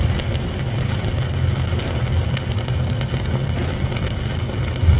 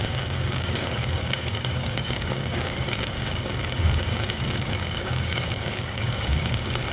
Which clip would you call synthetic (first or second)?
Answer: second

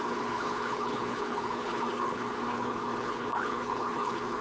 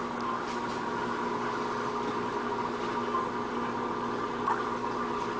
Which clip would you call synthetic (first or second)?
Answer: first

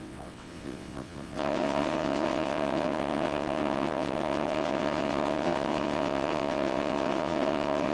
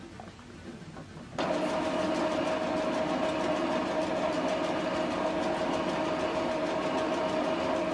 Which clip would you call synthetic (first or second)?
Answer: first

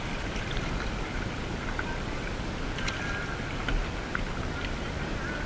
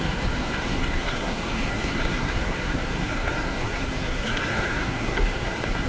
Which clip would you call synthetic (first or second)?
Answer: second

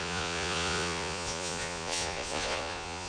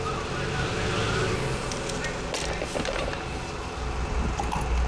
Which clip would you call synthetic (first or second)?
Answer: first